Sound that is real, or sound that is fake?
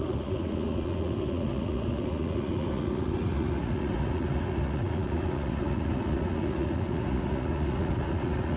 fake